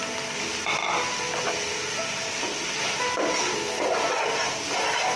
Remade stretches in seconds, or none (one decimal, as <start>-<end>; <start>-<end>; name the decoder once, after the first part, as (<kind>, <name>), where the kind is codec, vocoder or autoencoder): none